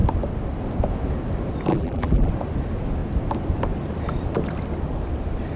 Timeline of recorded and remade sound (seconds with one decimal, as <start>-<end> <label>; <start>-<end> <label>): 0.0-1.7 recorded; 1.7-2.3 remade; 2.3-5.6 recorded